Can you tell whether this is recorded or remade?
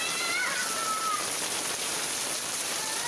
recorded